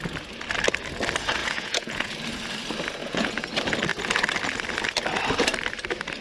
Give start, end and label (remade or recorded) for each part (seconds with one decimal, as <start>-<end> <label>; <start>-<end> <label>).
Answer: 0.0-1.4 recorded; 1.4-2.1 remade; 2.1-3.0 recorded; 3.0-3.5 remade; 3.5-6.2 recorded